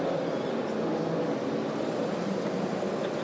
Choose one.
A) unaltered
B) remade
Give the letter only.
A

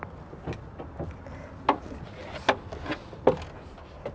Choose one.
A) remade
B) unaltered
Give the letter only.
B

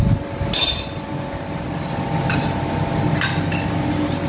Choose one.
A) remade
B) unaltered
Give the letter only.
B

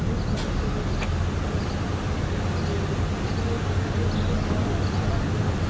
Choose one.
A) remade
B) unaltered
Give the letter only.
B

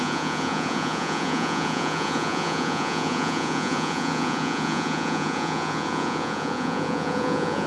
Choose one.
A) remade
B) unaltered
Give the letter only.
A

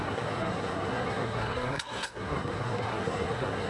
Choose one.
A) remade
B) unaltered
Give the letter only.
A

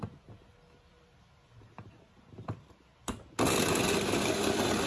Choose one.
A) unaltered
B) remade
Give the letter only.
A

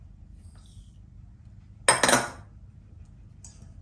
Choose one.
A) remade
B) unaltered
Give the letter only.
B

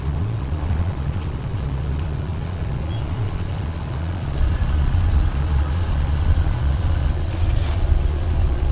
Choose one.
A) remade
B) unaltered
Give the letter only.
A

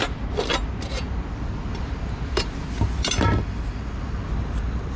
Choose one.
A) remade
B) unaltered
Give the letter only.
B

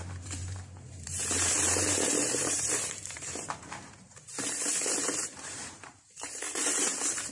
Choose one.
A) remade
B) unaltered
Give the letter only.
A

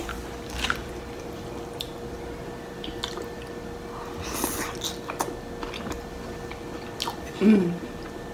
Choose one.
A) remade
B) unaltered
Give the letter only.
B